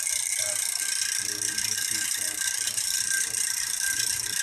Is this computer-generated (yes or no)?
yes